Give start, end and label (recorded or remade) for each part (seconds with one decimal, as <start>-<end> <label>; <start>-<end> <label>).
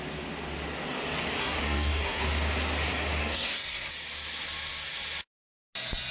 0.0-1.4 recorded; 1.4-2.2 remade; 2.2-3.2 recorded; 3.2-3.9 remade; 3.9-6.1 recorded